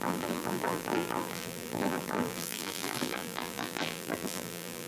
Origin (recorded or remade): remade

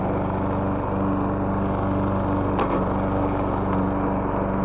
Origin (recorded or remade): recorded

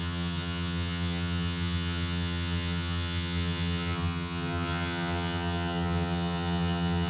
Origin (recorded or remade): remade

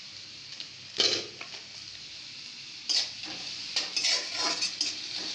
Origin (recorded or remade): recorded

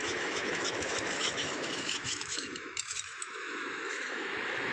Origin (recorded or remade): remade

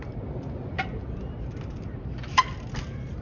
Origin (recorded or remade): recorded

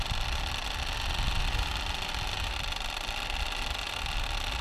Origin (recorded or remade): recorded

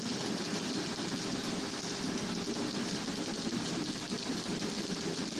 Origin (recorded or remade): recorded